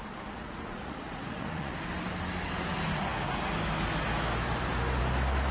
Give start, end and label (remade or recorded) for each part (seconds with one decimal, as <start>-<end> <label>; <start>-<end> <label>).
0.0-0.4 recorded; 0.4-1.7 remade; 1.7-5.5 recorded

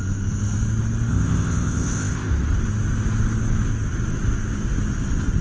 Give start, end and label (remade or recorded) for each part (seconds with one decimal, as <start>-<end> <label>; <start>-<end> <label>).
0.0-1.1 recorded; 1.1-2.3 remade; 2.3-5.4 recorded

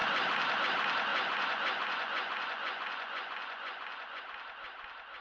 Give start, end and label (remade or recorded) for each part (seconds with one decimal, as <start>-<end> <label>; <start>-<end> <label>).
0.0-1.1 recorded; 1.1-4.2 remade; 4.2-5.2 recorded

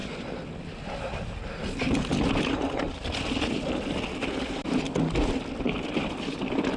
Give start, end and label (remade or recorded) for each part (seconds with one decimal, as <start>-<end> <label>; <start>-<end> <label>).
0.0-6.8 recorded

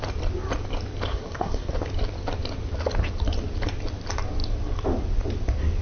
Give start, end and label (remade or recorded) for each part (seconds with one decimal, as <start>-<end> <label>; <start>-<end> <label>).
0.0-1.1 recorded; 1.1-1.7 remade; 1.7-5.8 recorded

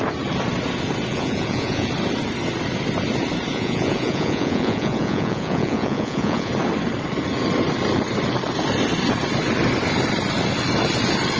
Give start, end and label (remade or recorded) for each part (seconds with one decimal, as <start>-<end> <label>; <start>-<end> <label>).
0.0-1.1 recorded; 1.1-1.9 remade; 1.9-3.5 recorded; 3.5-6.5 remade; 6.5-11.4 recorded

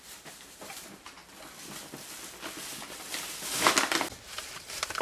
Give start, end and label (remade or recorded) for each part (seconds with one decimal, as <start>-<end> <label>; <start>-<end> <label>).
0.0-1.2 remade; 1.2-4.2 recorded; 4.2-5.0 remade